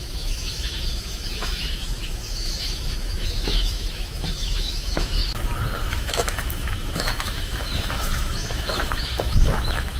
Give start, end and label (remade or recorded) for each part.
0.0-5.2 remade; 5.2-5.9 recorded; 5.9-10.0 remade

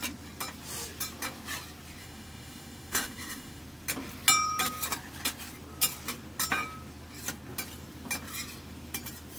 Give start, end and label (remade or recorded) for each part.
0.0-2.0 recorded; 2.0-3.6 remade; 3.6-9.4 recorded